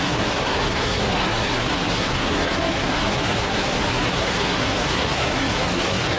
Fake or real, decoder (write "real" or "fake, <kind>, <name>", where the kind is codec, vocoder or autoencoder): fake, codec, SNAC